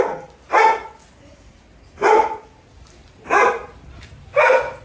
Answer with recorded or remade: recorded